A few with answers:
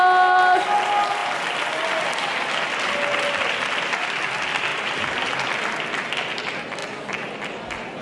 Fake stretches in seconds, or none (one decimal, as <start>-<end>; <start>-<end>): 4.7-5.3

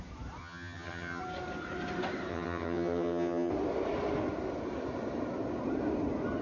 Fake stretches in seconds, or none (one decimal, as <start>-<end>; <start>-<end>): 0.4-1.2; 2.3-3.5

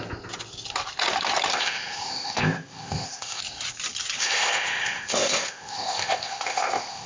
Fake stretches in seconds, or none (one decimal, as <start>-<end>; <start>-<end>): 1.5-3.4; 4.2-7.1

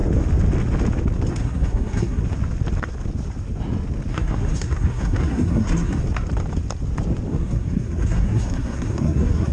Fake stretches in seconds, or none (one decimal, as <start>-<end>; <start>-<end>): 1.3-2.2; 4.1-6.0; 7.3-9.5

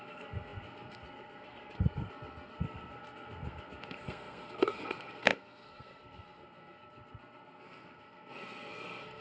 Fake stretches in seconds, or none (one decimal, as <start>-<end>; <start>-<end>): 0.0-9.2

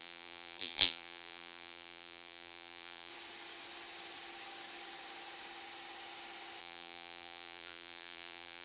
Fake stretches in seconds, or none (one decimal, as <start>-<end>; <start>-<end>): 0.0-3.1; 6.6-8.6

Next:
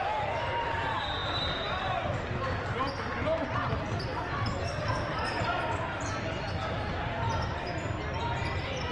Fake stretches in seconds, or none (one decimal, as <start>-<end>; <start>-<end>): none

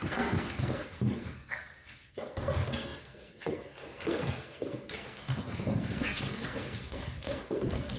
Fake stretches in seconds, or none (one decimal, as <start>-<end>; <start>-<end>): 0.0-8.0